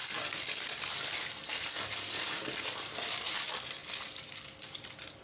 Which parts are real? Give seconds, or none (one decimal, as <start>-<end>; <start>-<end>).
0.0-3.8